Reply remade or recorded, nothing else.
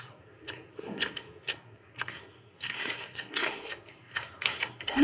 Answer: remade